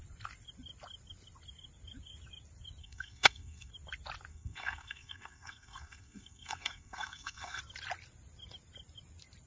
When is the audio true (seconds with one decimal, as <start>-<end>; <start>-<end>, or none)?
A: 0.0-2.8; 3.7-4.3; 7.6-9.5